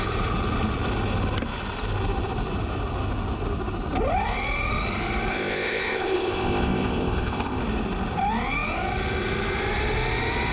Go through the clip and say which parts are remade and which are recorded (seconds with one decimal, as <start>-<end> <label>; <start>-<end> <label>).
0.0-5.3 recorded; 5.3-7.6 remade; 7.6-10.5 recorded